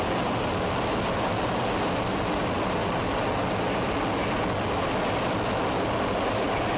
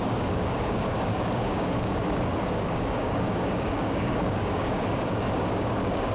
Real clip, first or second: first